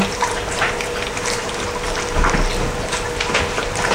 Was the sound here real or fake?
real